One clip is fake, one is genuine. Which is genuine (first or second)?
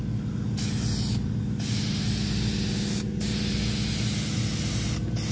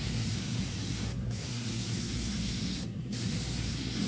first